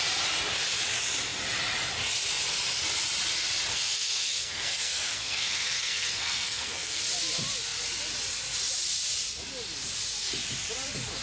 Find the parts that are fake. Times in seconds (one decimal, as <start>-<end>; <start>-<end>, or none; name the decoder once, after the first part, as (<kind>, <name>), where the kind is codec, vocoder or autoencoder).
3.7-7.0 (codec, SNAC)